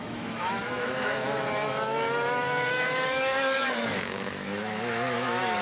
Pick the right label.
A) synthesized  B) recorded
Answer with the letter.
A